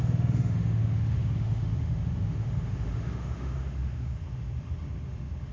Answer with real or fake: fake